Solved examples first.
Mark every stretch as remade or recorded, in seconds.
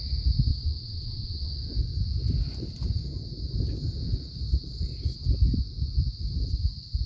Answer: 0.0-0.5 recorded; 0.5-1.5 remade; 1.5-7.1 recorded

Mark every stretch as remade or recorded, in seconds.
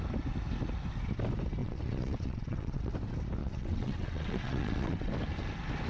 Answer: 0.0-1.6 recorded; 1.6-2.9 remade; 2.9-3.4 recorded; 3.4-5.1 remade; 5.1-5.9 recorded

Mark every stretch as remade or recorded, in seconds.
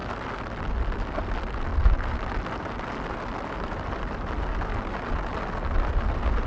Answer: 0.0-6.5 recorded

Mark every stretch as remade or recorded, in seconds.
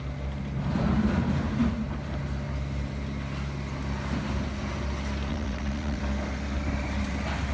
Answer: 0.0-5.3 recorded; 5.3-6.0 remade; 6.0-7.5 recorded